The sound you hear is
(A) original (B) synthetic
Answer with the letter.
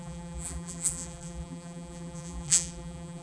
B